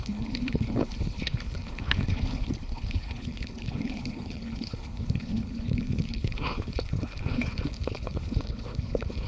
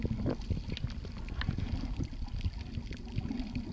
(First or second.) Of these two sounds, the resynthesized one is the first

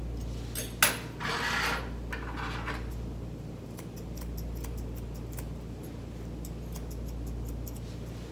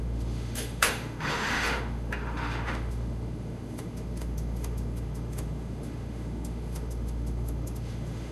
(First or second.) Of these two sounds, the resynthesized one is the second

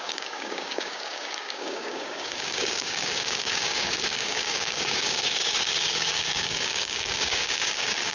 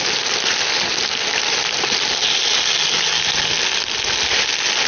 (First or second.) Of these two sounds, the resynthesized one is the first